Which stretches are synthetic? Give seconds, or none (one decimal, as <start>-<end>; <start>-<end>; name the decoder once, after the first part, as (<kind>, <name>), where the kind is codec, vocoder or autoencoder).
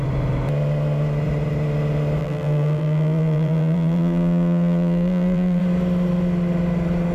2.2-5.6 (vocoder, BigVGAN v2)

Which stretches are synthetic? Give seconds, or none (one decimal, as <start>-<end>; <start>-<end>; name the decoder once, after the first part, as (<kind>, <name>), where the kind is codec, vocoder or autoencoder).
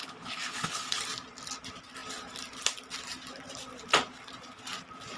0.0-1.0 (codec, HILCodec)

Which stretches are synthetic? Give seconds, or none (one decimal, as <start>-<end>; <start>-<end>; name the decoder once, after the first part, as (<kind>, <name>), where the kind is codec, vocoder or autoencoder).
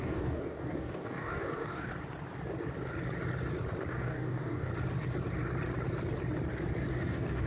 0.0-1.9 (codec, DAC); 3.9-4.7; 6.9-7.5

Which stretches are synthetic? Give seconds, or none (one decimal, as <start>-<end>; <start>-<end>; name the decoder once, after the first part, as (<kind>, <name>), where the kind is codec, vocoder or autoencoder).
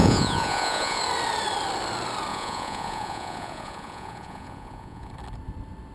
0.0-1.0 (vocoder, Vocos); 2.3-5.1